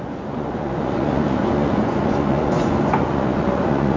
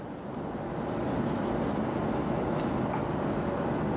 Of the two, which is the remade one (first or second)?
first